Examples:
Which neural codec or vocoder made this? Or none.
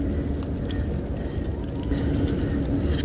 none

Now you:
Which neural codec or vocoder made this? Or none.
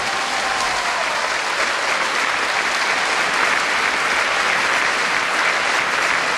none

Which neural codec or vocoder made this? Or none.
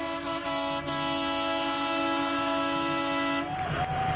none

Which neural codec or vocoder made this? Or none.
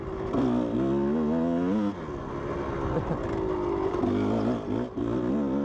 none